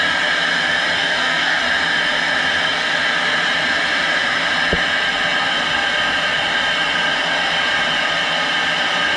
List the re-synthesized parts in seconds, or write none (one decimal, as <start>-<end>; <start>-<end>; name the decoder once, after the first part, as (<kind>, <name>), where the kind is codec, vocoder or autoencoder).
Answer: 1.0-1.6 (codec, SNAC)